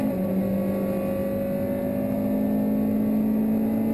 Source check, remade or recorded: recorded